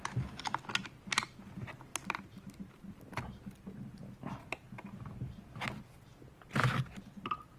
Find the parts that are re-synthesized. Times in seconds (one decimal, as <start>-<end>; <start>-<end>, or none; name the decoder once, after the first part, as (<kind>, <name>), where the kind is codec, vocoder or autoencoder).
none